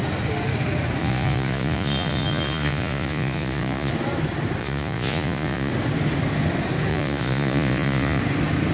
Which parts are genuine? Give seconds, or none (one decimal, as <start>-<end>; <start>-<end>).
0.0-1.0; 3.9-4.6; 5.7-6.9; 8.2-8.7